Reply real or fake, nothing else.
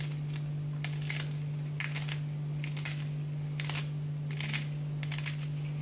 real